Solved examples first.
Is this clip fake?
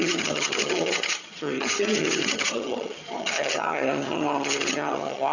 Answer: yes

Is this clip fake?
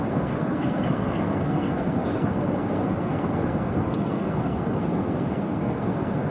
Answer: yes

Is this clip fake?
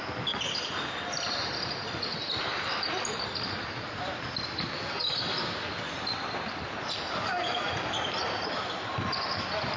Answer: no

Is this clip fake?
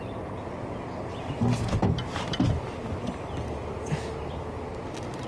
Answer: no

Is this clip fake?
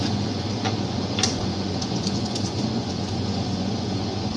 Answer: yes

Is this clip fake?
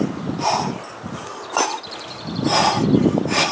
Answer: no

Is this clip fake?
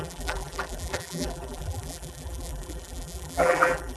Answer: yes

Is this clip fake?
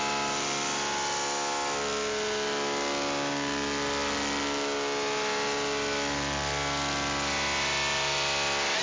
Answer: no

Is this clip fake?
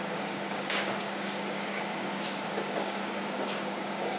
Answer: yes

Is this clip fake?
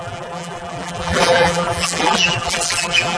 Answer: yes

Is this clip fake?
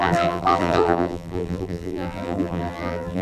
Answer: yes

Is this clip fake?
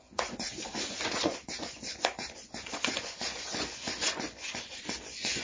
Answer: yes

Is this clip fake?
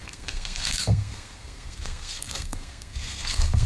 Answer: yes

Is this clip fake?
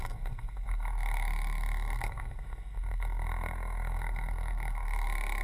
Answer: yes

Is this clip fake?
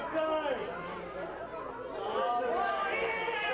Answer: no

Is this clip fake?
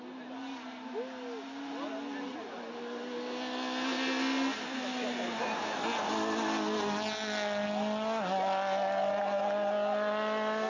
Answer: no